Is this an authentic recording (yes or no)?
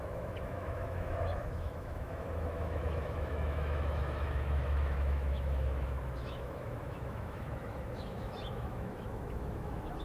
no